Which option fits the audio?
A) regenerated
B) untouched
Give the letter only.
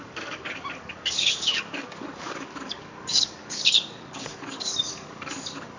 A